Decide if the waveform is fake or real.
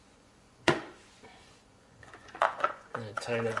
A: fake